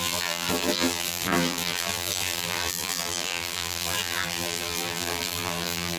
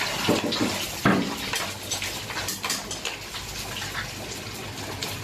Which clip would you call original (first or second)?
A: second